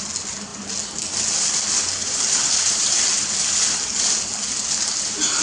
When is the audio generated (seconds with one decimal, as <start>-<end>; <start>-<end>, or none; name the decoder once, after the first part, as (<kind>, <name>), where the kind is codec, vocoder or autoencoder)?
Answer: 2.0-3.3 (vocoder, BigVGAN v2)